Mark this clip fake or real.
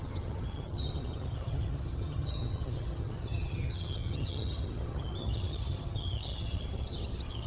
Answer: fake